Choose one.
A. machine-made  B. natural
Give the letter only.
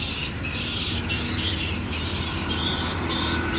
B